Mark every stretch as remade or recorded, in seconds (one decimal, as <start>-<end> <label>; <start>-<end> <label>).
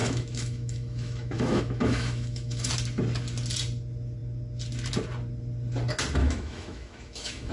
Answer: 0.0-2.7 remade; 2.7-6.2 recorded; 6.2-7.5 remade